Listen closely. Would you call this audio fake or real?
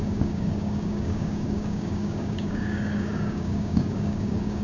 fake